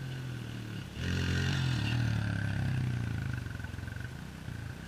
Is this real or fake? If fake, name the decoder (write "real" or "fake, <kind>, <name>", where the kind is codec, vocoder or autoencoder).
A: real